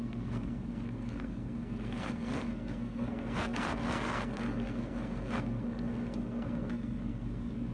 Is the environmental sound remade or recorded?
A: remade